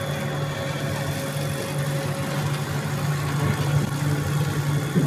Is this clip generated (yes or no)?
no